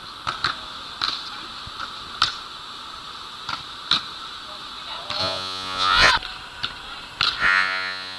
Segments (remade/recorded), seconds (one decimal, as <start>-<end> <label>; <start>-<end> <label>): 0.0-5.2 recorded; 5.2-6.1 remade; 6.1-7.4 recorded; 7.4-8.2 remade

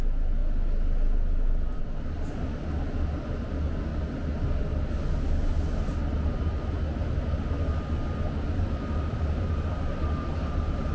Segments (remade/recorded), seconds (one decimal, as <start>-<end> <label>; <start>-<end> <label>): 0.0-10.9 recorded